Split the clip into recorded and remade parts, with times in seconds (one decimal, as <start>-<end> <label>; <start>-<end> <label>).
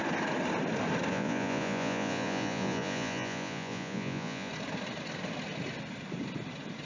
0.0-1.1 recorded; 1.1-4.5 remade; 4.5-6.9 recorded